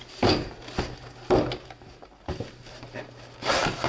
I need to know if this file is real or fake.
real